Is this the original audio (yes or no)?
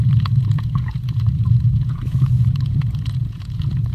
no